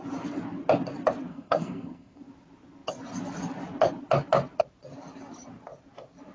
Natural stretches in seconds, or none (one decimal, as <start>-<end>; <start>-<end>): 0.0-1.3; 2.2-6.3